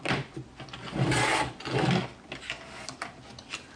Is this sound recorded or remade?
recorded